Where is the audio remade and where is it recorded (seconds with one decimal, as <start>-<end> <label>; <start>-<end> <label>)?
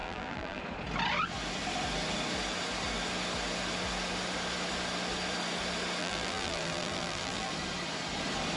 0.0-0.6 remade; 0.6-6.0 recorded; 6.0-7.5 remade; 7.5-8.6 recorded